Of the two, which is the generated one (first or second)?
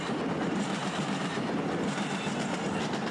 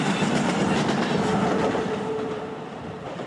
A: second